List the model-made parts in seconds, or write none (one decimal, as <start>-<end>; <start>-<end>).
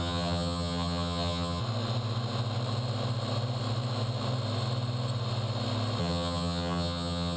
0.0-1.6; 6.0-7.4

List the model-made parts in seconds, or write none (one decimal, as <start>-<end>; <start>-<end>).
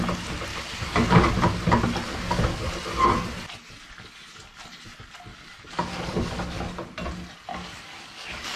0.5-1.3; 2.1-2.7; 5.3-6.6; 7.5-8.6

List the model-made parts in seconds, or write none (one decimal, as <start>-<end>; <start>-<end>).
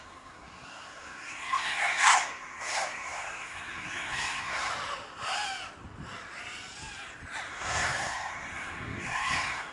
0.0-4.7; 7.5-9.7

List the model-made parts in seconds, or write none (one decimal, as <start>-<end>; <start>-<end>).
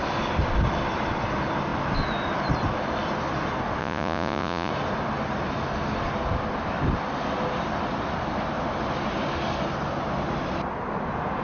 3.8-4.7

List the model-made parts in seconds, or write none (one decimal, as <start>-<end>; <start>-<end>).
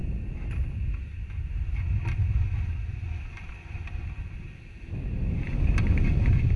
none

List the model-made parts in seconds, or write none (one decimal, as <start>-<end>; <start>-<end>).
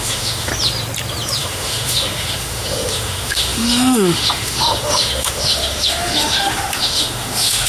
0.0-0.5; 1.4-7.7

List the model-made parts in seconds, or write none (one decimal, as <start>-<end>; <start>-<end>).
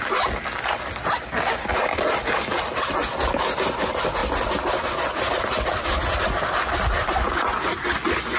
none